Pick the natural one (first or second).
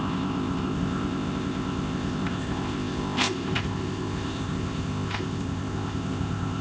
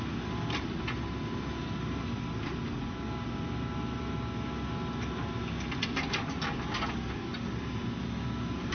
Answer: second